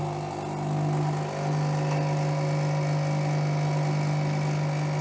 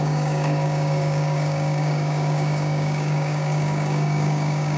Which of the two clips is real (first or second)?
first